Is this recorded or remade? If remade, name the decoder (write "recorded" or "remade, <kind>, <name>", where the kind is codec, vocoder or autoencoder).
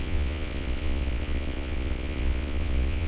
remade, vocoder, Vocos